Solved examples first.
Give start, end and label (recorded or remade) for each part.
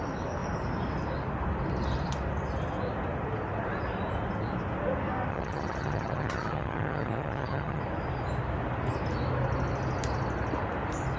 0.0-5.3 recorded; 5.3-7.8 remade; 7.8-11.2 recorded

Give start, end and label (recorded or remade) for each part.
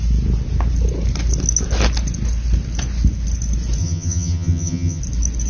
0.0-3.8 recorded; 3.8-5.0 remade; 5.0-5.5 recorded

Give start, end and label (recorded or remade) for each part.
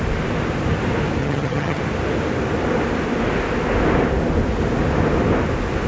0.0-1.2 recorded; 1.2-1.8 remade; 1.8-5.9 recorded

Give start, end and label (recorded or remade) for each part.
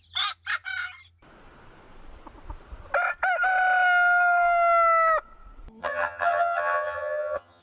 0.0-5.8 recorded; 5.8-7.6 remade